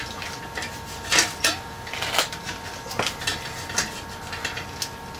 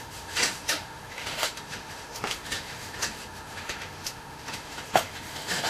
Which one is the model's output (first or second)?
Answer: second